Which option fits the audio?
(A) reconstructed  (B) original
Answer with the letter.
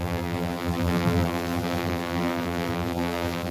A